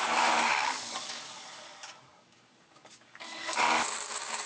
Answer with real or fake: fake